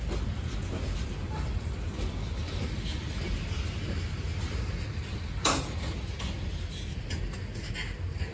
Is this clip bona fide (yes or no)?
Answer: yes